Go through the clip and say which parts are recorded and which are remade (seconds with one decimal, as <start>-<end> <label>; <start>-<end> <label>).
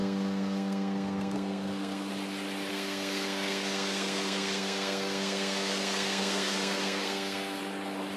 0.0-2.1 remade; 2.1-2.7 recorded; 2.7-7.6 remade; 7.6-8.2 recorded